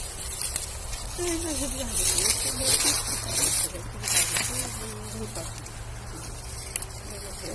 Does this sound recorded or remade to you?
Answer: recorded